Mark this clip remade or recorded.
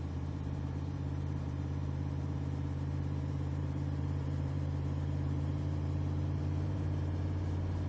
remade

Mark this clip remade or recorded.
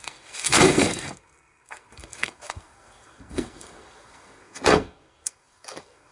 remade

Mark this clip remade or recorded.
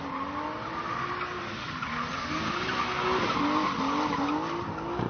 recorded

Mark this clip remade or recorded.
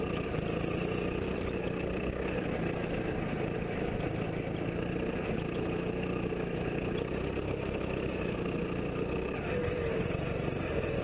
recorded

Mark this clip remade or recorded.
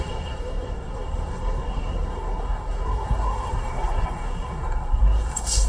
remade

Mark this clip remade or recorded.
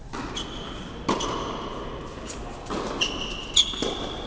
recorded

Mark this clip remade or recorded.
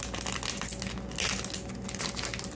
recorded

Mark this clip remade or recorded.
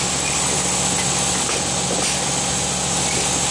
recorded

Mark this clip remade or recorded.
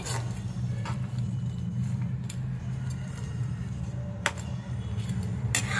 recorded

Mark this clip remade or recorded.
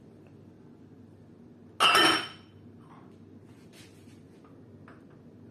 recorded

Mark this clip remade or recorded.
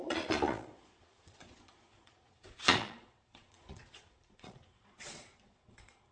remade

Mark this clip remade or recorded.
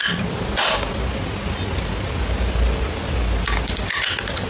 recorded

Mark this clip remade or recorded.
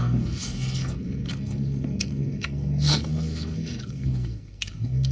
remade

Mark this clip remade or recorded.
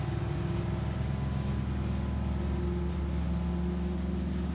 recorded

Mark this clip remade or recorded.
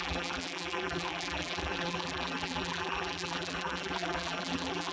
remade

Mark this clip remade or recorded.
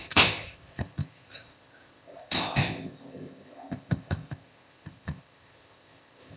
remade